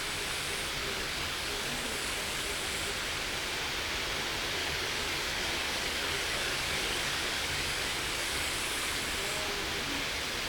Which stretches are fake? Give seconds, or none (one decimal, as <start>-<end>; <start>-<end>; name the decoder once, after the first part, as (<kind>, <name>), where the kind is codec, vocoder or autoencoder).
0.8-2.4 (codec, DAC); 4.6-9.0

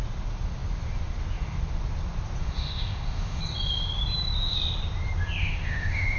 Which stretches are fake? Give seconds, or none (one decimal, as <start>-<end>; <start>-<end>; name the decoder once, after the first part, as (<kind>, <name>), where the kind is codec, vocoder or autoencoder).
2.4-3.4 (autoencoder, DAC-VAE); 5.4-6.2